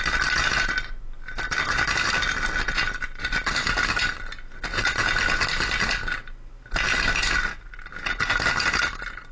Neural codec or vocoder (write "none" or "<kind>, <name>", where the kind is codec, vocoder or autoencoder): none